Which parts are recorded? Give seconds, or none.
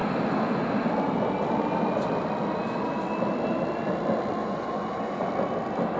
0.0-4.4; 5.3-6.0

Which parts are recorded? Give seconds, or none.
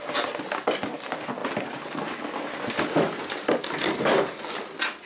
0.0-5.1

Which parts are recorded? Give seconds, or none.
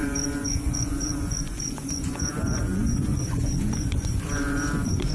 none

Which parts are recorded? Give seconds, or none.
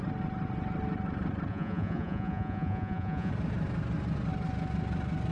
0.0-1.5; 3.3-5.3